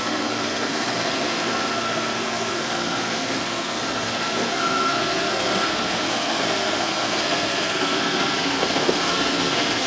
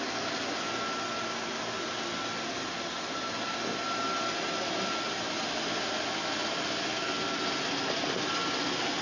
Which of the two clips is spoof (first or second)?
first